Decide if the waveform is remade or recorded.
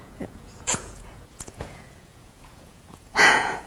remade